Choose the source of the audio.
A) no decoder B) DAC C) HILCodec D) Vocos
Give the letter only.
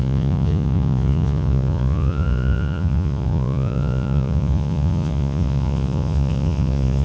D